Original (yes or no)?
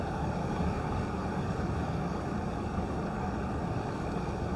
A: no